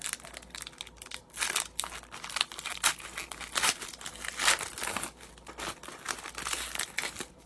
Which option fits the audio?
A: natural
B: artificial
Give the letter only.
A